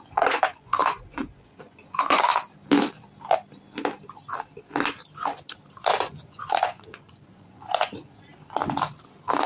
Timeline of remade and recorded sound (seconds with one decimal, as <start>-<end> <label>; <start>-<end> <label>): 0.0-2.3 remade; 2.3-5.7 recorded; 5.7-8.3 remade; 8.3-9.5 recorded